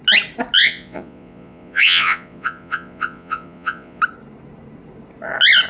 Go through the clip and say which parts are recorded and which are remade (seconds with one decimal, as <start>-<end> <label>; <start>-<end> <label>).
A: 0.0-0.6 recorded; 0.6-4.0 remade; 4.0-5.7 recorded